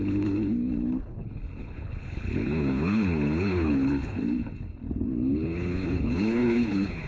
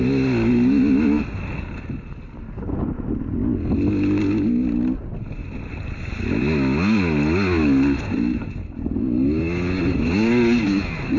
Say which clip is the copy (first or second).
first